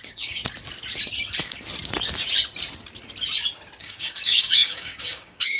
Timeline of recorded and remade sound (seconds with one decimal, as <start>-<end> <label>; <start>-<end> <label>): 0.0-0.4 remade; 0.4-3.8 recorded; 3.8-5.6 remade